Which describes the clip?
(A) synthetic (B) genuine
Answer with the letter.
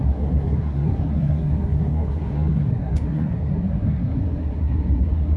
A